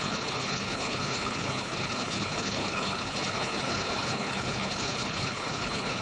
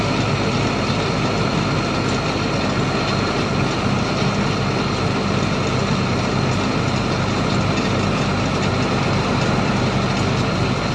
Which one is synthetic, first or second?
first